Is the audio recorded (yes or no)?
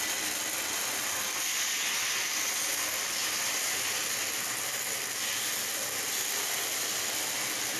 yes